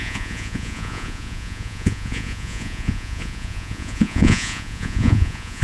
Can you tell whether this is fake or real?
fake